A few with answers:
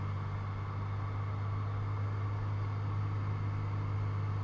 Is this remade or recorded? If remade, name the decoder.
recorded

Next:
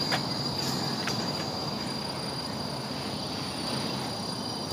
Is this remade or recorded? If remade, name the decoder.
remade, vocoder, BigVGAN v2